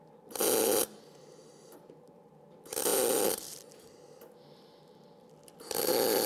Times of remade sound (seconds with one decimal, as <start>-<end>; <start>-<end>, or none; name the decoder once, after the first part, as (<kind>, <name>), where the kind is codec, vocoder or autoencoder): 0.0-0.4 (vocoder, BigVGAN v2); 1.2-6.3